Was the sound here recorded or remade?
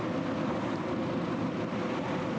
recorded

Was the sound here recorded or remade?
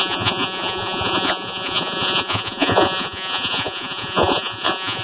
remade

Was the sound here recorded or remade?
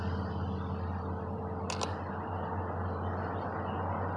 recorded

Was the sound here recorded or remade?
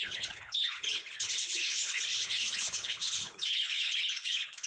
remade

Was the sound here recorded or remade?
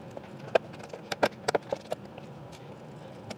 recorded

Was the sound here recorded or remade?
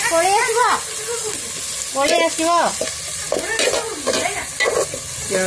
recorded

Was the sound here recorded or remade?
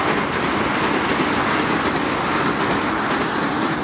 recorded